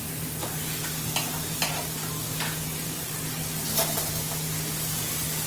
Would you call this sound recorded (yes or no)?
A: yes